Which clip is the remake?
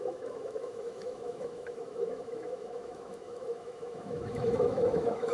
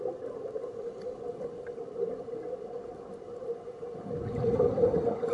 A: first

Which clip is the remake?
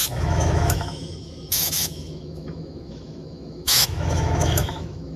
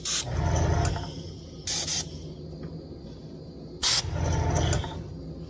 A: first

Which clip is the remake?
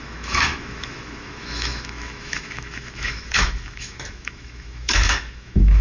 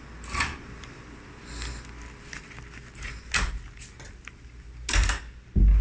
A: first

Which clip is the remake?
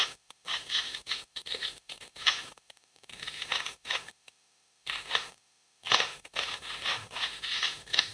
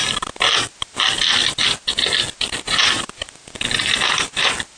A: first